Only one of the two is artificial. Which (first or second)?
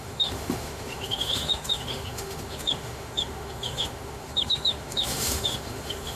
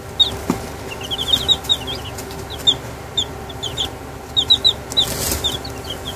first